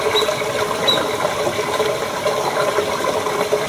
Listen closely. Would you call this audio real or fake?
real